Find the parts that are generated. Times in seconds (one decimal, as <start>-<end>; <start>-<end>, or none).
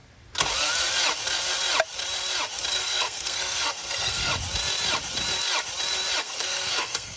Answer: 2.7-4.3; 6.2-7.2